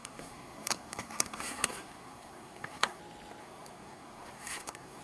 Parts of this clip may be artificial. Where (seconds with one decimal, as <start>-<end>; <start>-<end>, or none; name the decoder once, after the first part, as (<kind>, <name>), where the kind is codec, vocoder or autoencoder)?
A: 0.0-3.0 (codec, SNAC); 3.4-5.0